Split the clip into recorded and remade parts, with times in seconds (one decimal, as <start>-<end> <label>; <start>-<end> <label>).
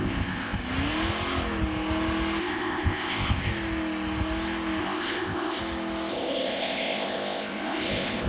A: 0.0-0.6 remade; 0.6-2.4 recorded; 2.4-3.5 remade; 3.5-4.8 recorded; 4.8-5.6 remade; 5.6-6.1 recorded; 6.1-8.3 remade